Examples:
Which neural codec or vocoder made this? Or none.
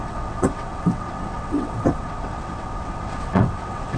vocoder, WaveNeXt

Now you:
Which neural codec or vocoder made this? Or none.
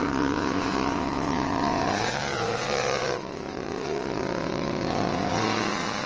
vocoder, WaveNeXt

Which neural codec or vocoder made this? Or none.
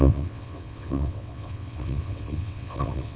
vocoder, WaveNeXt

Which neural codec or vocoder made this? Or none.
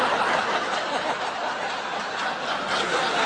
none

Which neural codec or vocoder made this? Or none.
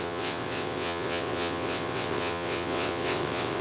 vocoder, WaveNeXt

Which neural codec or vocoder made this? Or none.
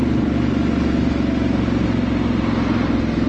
none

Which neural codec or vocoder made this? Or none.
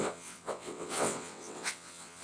vocoder, WaveNeXt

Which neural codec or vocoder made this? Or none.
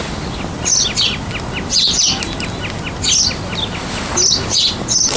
none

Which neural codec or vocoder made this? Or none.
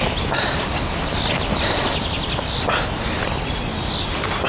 none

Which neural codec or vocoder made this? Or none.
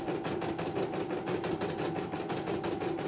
none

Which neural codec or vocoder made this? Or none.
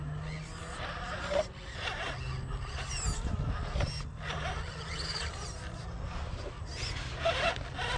none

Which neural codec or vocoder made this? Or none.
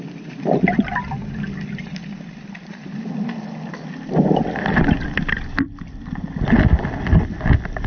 none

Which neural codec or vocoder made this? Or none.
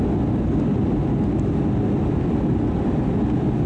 none